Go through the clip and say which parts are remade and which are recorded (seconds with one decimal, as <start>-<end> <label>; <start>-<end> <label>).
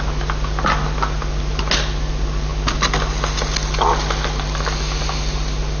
0.0-5.8 recorded